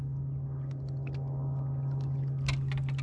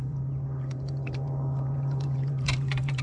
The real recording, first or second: first